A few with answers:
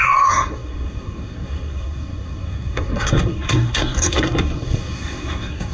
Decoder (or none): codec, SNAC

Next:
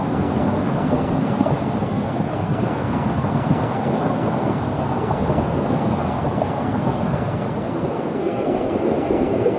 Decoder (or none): codec, SNAC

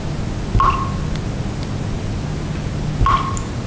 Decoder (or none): none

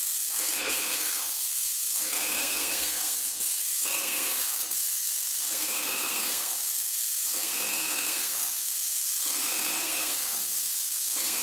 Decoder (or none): codec, SNAC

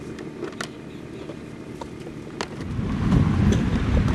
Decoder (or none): none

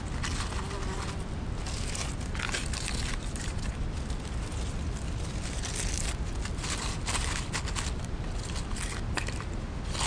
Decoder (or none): none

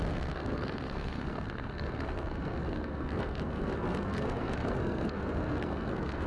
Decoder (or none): codec, SNAC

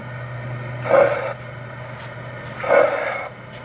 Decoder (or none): none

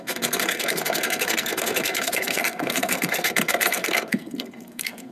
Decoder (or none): codec, SNAC